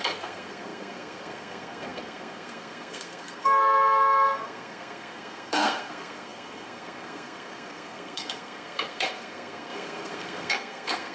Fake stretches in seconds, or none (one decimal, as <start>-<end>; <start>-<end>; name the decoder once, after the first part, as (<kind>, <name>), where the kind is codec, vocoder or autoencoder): 0.0-11.1 (codec, SNAC)